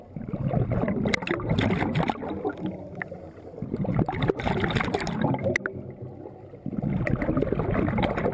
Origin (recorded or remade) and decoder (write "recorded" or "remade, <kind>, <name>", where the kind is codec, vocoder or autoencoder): recorded